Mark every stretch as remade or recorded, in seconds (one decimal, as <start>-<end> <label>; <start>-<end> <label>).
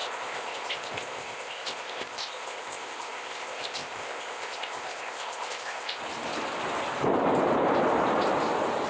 0.0-6.0 remade; 6.0-8.9 recorded